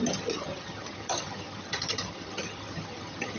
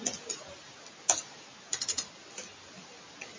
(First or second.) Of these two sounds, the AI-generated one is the first